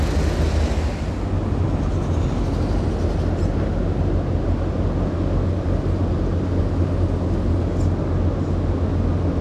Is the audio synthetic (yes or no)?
no